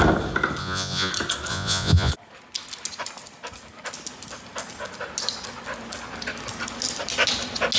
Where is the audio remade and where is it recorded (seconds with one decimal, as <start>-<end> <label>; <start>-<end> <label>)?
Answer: 0.0-0.6 recorded; 0.6-1.1 remade; 1.1-1.5 recorded; 1.5-2.1 remade; 2.1-7.8 recorded